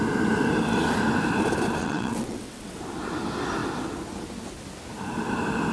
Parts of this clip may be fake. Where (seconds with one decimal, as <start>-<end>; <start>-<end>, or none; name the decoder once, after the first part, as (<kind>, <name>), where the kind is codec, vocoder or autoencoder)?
1.8-2.8 (vocoder, WaveNeXt)